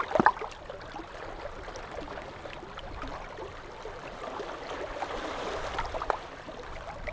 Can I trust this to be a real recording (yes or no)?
no